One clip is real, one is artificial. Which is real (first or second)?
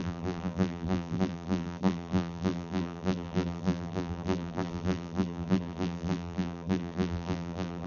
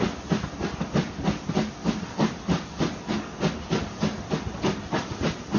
second